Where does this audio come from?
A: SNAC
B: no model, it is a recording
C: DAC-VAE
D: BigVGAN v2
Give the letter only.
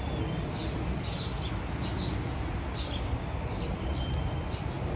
B